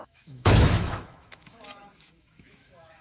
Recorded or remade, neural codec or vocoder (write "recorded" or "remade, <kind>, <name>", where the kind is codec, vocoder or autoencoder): remade, autoencoder, DAC-VAE